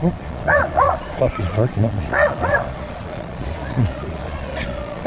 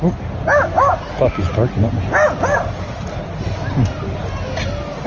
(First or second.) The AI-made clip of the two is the first